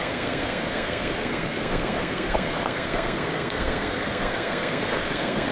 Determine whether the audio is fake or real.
fake